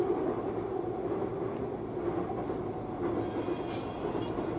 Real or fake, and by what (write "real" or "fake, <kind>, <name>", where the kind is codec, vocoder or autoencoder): real